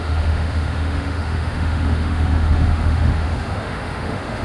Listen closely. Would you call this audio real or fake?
fake